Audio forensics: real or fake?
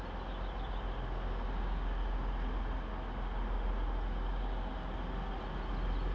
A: real